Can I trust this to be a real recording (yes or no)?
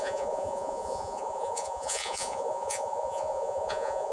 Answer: no